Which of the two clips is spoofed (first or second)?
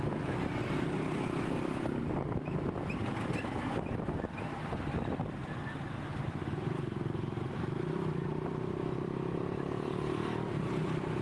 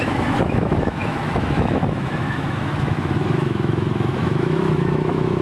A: second